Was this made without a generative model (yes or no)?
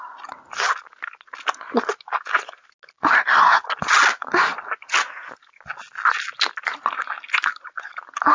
yes